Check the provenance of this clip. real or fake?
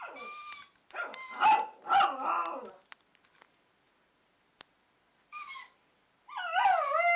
real